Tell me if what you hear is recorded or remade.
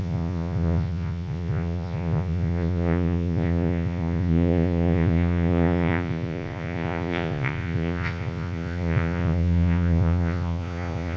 remade